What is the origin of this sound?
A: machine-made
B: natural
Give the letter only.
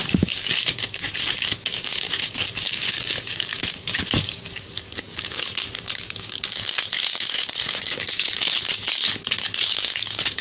A